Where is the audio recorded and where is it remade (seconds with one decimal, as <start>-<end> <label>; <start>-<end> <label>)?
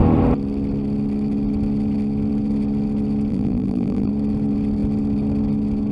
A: 0.0-3.3 recorded; 3.3-4.1 remade; 4.1-5.9 recorded